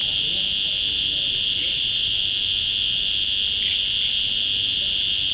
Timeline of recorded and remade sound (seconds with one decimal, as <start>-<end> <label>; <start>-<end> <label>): 0.0-1.6 recorded; 1.6-2.1 remade; 2.1-5.3 recorded